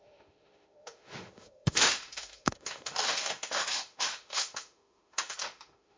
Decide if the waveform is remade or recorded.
remade